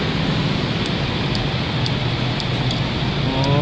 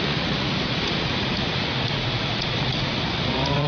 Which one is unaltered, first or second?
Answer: first